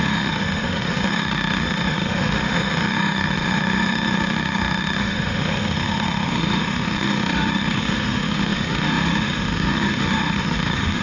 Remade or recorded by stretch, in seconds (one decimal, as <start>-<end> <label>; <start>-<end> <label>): 0.0-11.0 remade